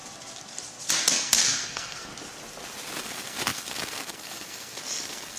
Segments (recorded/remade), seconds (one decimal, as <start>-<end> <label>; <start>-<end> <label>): 0.0-0.9 recorded; 0.9-2.1 remade; 2.1-3.0 recorded; 3.0-5.4 remade